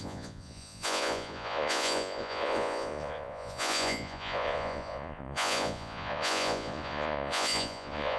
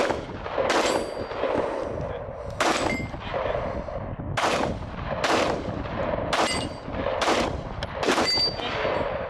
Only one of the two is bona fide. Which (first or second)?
second